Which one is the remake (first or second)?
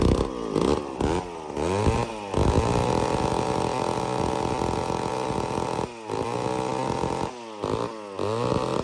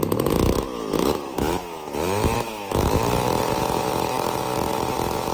second